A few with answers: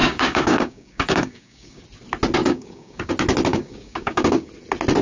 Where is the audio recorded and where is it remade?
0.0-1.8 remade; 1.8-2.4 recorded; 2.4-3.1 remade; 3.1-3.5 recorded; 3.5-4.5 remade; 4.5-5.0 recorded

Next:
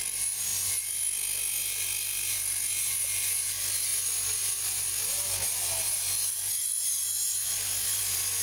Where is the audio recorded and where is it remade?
0.0-8.4 recorded

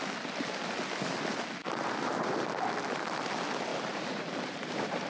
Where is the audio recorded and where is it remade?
0.0-1.6 recorded; 1.6-2.4 remade; 2.4-3.7 recorded; 3.7-5.1 remade

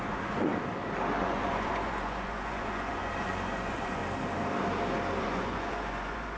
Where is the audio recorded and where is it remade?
0.0-0.5 remade; 0.5-1.1 recorded; 1.1-4.0 remade; 4.0-5.2 recorded; 5.2-6.4 remade

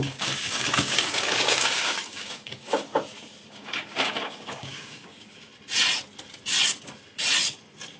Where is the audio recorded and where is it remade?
0.0-2.9 remade; 2.9-3.5 recorded; 3.5-5.5 remade; 5.5-8.0 recorded